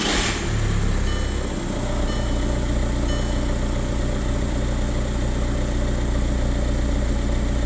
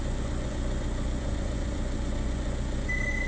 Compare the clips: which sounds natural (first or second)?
first